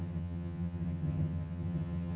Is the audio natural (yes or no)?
no